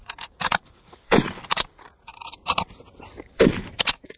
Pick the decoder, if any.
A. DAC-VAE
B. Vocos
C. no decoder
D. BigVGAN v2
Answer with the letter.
D